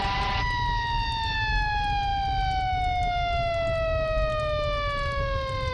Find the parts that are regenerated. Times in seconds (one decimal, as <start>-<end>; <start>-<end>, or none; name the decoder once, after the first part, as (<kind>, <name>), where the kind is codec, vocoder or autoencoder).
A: none